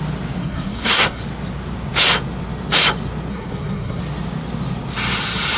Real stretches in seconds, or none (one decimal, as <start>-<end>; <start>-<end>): 0.0-0.4; 1.2-3.3; 4.0-5.6